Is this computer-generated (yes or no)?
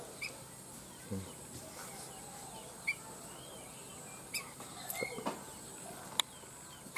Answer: no